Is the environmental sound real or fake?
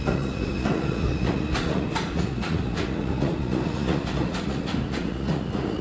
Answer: fake